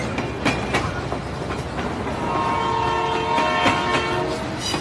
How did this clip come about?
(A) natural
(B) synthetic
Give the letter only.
A